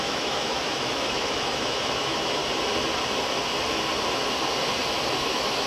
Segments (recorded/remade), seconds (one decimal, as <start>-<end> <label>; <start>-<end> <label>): 0.0-2.4 remade; 2.4-5.2 recorded; 5.2-5.7 remade